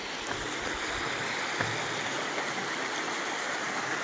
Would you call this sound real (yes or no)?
yes